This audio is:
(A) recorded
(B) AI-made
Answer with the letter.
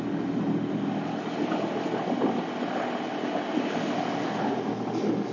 A